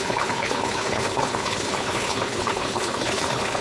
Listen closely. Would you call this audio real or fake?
fake